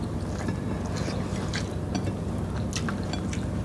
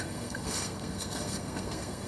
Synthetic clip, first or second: second